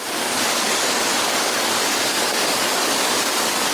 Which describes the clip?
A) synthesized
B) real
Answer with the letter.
A